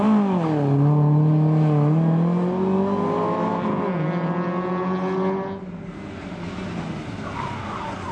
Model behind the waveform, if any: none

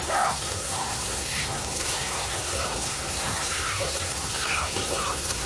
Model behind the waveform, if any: codec, SNAC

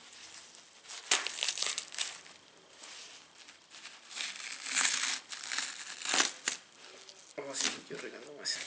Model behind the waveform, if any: none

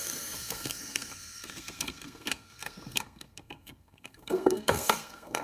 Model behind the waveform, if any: codec, SNAC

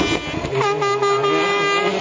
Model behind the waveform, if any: none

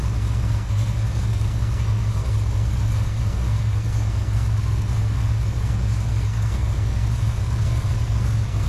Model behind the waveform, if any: codec, SNAC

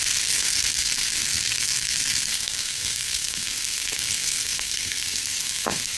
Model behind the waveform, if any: codec, SNAC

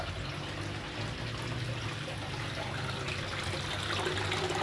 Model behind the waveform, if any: none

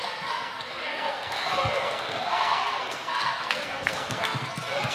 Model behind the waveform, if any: codec, SNAC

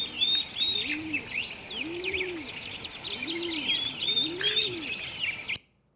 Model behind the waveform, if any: none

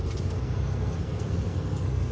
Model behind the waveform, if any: codec, SNAC